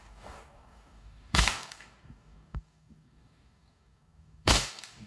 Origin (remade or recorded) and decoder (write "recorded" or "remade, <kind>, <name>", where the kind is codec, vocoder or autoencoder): remade, codec, DAC